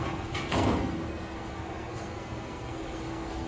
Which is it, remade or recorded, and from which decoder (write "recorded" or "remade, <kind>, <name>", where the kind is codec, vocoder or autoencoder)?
remade, codec, SNAC